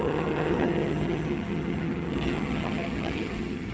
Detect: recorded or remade remade